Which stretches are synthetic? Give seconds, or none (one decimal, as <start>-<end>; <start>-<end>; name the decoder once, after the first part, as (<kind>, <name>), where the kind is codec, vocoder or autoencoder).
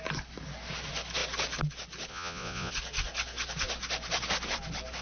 2.1-2.7 (vocoder, Vocos)